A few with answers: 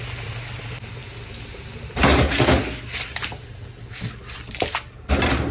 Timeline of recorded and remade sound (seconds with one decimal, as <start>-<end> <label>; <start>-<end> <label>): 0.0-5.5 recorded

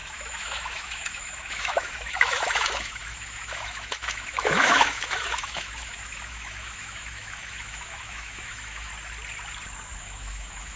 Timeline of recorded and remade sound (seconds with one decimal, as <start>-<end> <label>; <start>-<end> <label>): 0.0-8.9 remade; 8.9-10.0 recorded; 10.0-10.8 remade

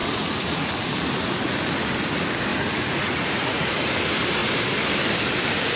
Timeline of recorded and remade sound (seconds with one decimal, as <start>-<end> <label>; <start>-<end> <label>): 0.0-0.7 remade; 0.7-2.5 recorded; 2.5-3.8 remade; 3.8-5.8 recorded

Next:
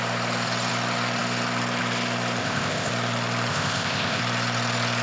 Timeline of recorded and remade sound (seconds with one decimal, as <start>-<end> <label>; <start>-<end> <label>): 0.0-2.4 recorded; 2.4-2.9 remade; 2.9-3.5 recorded; 3.5-4.2 remade; 4.2-5.0 recorded